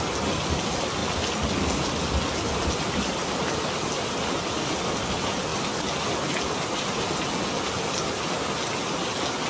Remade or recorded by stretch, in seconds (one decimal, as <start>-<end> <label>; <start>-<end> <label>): 0.0-9.5 recorded